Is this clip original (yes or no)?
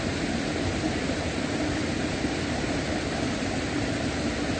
yes